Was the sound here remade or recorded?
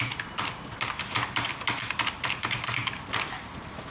recorded